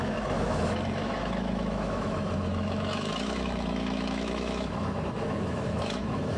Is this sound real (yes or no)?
no